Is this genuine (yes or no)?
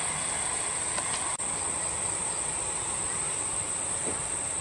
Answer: no